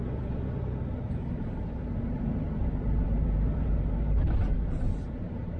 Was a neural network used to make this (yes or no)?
yes